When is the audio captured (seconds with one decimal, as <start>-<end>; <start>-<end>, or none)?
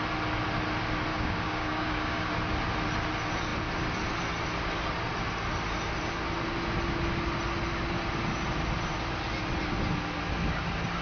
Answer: 0.0-1.1; 2.3-11.0